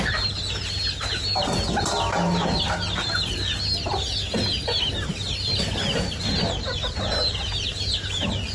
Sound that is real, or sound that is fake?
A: real